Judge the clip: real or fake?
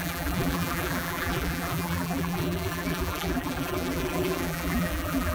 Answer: fake